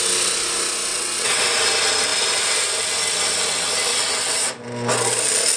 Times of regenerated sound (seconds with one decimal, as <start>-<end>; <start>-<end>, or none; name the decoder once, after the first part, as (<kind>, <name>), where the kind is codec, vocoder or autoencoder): 0.9-1.4 (vocoder, WaveNeXt); 3.9-4.4